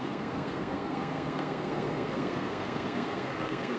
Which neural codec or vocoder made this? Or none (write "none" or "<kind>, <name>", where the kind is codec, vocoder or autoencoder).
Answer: codec, SNAC